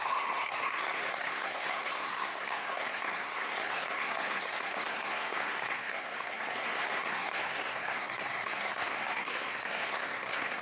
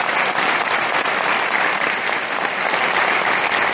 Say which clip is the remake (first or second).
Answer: first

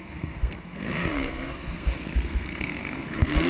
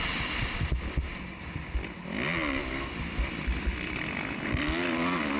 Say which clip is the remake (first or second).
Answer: first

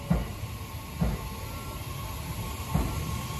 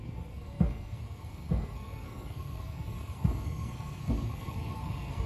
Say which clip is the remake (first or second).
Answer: second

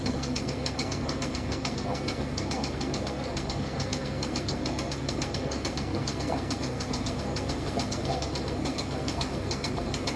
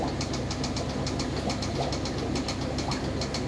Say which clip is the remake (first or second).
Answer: first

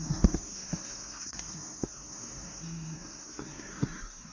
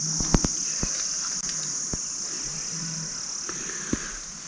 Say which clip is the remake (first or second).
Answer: first